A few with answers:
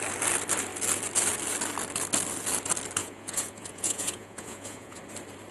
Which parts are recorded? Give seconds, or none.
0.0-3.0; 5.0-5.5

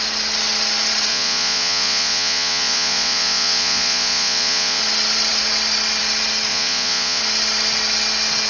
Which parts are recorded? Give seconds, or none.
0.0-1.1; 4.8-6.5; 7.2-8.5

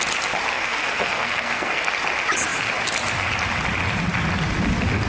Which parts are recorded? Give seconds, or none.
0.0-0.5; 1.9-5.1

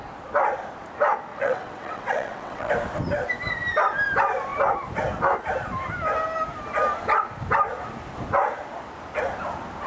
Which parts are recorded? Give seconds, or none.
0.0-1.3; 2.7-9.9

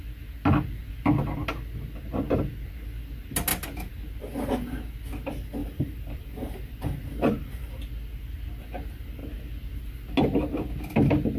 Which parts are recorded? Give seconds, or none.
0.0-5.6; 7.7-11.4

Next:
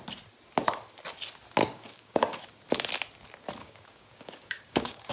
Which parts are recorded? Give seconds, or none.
0.0-1.6; 2.4-3.6